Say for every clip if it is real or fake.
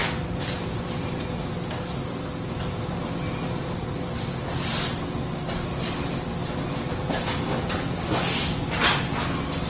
real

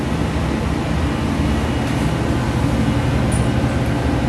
real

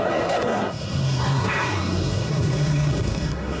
fake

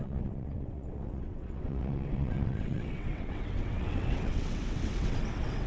fake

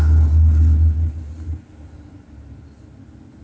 real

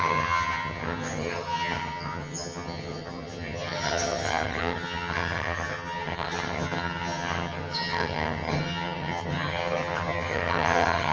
fake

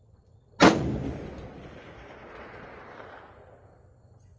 real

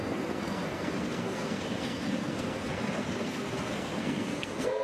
fake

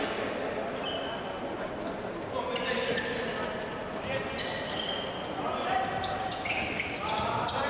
real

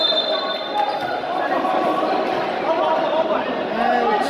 real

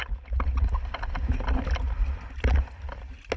real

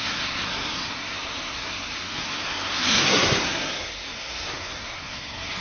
fake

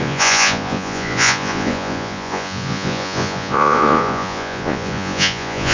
fake